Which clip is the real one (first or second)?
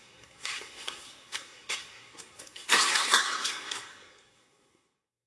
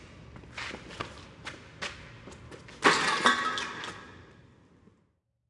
second